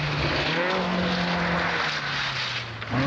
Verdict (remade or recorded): recorded